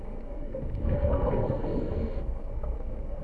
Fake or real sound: fake